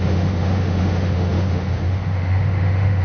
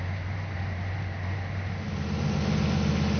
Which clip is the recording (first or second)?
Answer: second